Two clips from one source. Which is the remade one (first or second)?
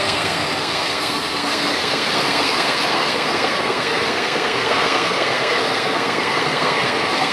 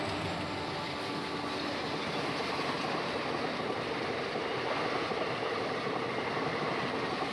first